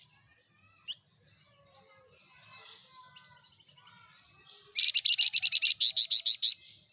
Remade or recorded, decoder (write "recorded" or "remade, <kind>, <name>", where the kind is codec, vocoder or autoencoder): recorded